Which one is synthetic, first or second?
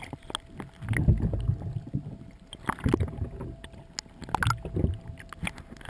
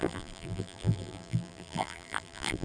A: second